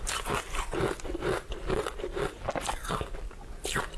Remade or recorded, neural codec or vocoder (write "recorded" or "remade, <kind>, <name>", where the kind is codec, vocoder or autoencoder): recorded